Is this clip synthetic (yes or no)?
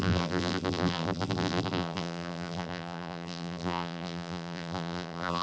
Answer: yes